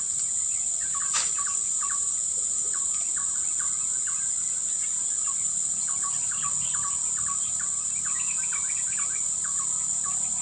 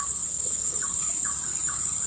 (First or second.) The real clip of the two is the first